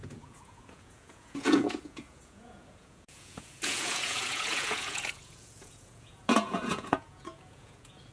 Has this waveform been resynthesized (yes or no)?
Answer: yes